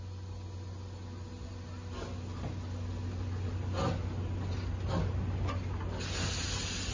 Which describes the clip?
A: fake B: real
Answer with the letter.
B